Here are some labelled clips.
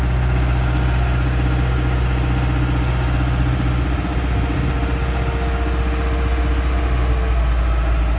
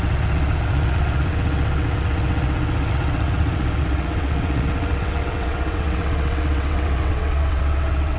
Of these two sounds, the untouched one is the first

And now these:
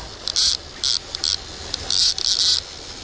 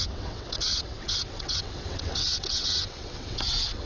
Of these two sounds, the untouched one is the first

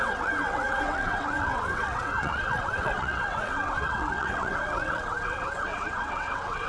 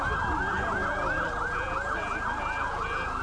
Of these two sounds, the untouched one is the second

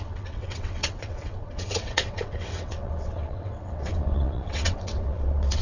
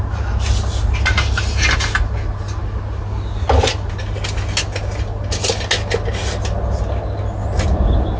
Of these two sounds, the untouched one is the second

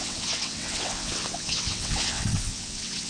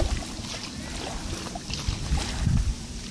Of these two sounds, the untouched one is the second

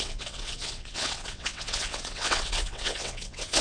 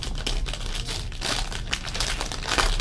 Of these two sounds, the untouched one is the second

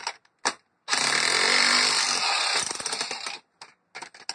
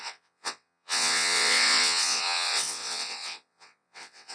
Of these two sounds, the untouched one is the first